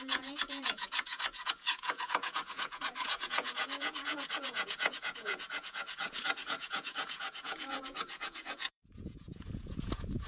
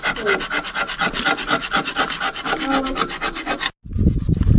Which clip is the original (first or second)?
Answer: second